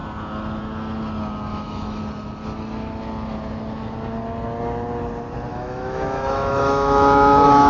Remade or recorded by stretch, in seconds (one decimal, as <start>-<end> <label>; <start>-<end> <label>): 0.0-1.5 recorded; 1.5-2.0 remade; 2.0-5.5 recorded; 5.5-7.7 remade